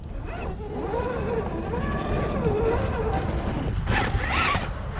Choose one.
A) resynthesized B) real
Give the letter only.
B